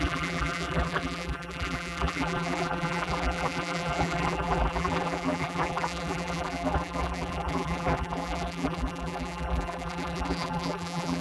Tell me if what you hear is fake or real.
fake